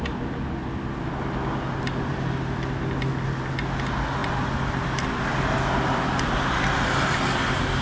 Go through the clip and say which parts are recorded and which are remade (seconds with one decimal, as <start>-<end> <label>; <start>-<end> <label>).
0.0-7.8 recorded